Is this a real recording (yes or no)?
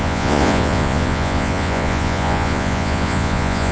no